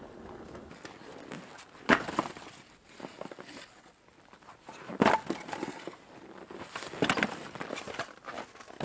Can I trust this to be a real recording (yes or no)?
yes